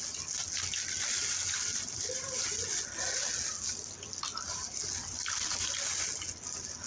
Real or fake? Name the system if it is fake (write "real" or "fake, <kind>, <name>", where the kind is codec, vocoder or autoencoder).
real